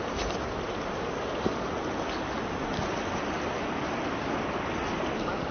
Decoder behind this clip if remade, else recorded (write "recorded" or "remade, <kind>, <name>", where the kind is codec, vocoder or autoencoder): recorded